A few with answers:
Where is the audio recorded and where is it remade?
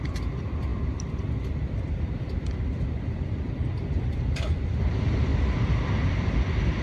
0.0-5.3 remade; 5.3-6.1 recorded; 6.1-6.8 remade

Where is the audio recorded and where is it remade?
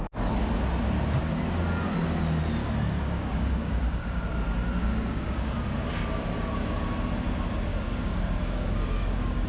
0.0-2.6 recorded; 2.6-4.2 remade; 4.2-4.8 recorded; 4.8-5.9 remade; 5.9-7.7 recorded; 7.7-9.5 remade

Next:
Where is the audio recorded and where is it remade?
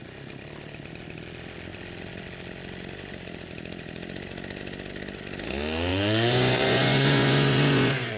0.0-5.9 recorded; 5.9-8.2 remade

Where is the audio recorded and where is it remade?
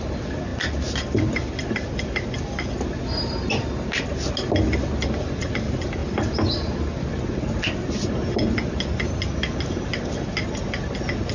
0.0-11.3 recorded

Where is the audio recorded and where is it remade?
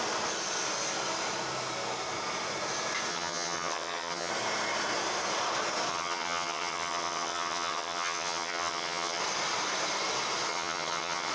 0.0-3.1 recorded; 3.1-4.3 remade; 4.3-5.9 recorded; 5.9-9.2 remade; 9.2-10.5 recorded; 10.5-11.3 remade